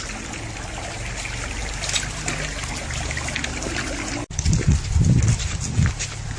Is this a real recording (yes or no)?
yes